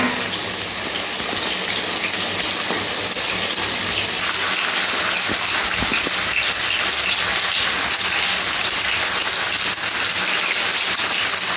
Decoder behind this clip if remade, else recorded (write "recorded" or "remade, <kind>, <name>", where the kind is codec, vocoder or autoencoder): recorded